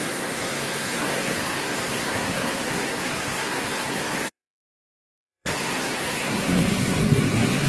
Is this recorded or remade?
remade